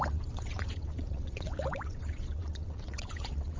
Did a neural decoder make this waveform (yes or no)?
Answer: yes